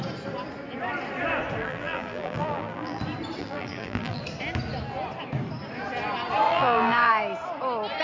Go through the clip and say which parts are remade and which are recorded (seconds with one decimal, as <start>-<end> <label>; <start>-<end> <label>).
0.0-1.6 recorded; 1.6-3.0 remade; 3.0-3.4 recorded; 3.4-4.2 remade; 4.2-6.5 recorded; 6.5-7.1 remade; 7.1-8.0 recorded